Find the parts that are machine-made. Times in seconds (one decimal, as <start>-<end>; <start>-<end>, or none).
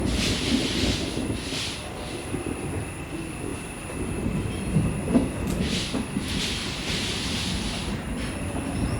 none